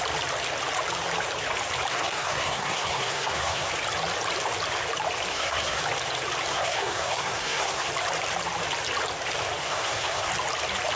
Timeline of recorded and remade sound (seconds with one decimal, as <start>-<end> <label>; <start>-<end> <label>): 0.0-1.9 recorded; 1.9-3.7 remade; 3.7-5.3 recorded; 5.3-5.8 remade; 5.8-6.5 recorded; 6.5-7.9 remade; 7.9-9.6 recorded; 9.6-10.3 remade; 10.3-11.0 recorded